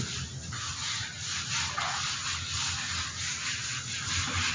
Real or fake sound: real